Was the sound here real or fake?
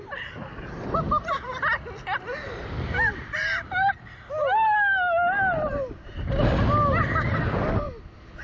real